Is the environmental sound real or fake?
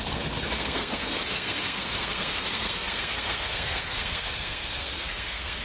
fake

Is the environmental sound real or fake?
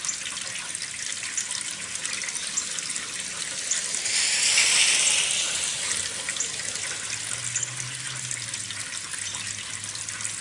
real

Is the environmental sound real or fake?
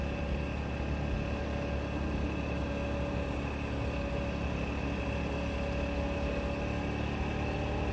real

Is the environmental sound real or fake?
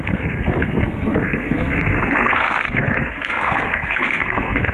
fake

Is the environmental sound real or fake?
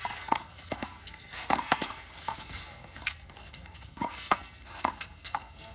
fake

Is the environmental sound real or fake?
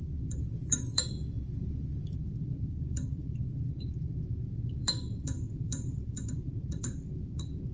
fake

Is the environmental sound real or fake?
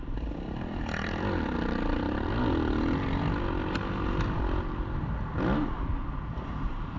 real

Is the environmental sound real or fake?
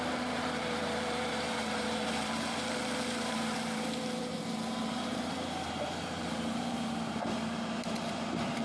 fake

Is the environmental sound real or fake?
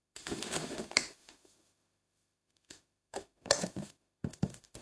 fake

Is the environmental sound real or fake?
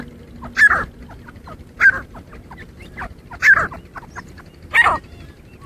real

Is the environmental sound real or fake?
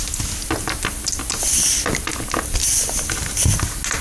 real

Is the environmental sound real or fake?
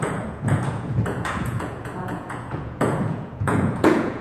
fake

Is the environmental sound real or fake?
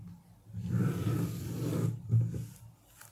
real